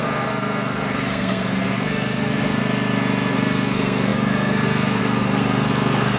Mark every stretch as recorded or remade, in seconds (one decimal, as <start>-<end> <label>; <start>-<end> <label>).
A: 0.0-2.6 remade; 2.6-3.3 recorded; 3.3-6.2 remade